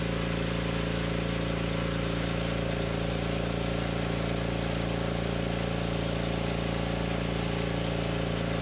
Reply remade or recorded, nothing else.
recorded